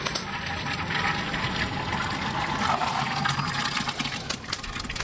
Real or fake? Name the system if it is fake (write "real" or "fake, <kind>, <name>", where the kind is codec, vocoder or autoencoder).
real